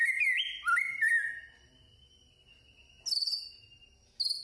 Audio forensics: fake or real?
real